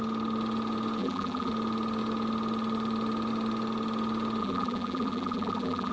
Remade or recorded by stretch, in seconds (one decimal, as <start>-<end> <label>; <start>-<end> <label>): 0.0-1.0 recorded; 1.0-1.5 remade; 1.5-4.4 recorded; 4.4-5.9 remade